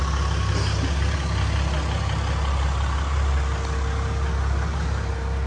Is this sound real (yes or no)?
yes